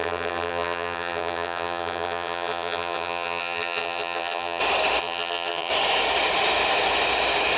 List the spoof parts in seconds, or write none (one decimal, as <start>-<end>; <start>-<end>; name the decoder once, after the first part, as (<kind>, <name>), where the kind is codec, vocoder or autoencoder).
0.0-4.6 (vocoder, HiFi-GAN); 5.0-5.7